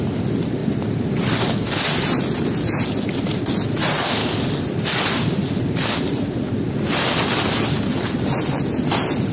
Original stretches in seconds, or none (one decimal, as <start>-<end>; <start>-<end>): 0.0-4.2; 7.1-9.3